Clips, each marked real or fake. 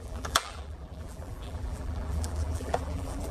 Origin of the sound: fake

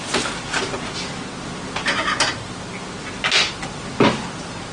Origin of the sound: real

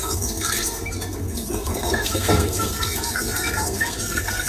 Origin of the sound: fake